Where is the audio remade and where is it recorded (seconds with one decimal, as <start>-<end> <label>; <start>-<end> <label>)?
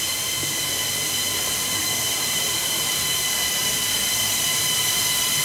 0.0-1.8 recorded; 1.8-3.0 remade; 3.0-5.4 recorded